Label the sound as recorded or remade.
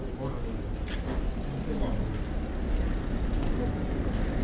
recorded